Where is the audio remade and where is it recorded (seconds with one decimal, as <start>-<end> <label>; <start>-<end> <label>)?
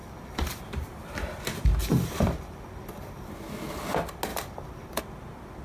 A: 0.0-0.6 remade; 0.6-1.8 recorded; 1.8-3.3 remade; 3.3-4.3 recorded; 4.3-5.0 remade; 5.0-5.6 recorded